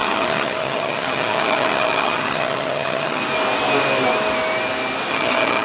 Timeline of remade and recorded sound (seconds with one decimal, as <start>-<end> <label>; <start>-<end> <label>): 0.0-3.2 remade; 3.2-5.1 recorded; 5.1-5.6 remade

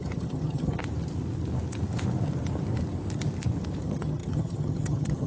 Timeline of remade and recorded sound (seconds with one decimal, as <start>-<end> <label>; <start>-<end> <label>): 0.0-0.8 remade; 0.8-3.8 recorded; 3.8-5.3 remade

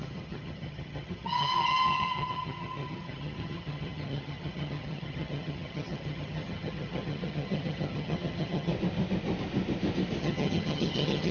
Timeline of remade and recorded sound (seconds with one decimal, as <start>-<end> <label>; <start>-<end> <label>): 0.0-8.7 remade; 8.7-10.2 recorded; 10.2-11.3 remade

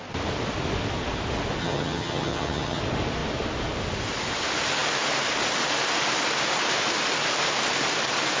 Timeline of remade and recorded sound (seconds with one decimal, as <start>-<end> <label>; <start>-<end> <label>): 0.0-1.6 recorded; 1.6-2.8 remade; 2.8-8.4 recorded